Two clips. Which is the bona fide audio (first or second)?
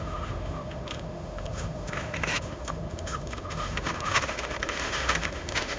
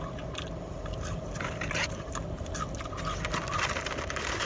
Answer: second